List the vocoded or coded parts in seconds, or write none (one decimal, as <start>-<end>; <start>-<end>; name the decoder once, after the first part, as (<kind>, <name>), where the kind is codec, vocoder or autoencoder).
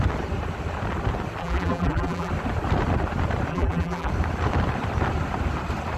1.4-2.3 (vocoder, BigVGAN v2); 3.5-4.1